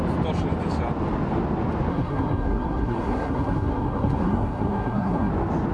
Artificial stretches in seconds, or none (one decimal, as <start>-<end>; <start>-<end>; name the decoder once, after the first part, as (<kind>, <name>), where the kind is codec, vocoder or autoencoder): 1.9-5.3 (codec, SNAC)